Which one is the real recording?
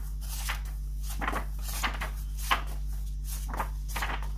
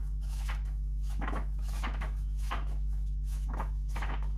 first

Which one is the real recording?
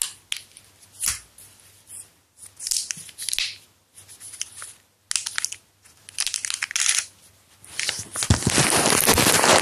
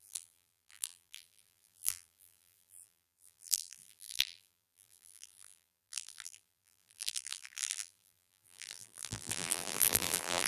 first